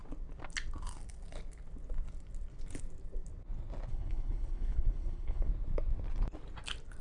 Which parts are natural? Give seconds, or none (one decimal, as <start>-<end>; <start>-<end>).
0.0-3.9; 5.5-7.0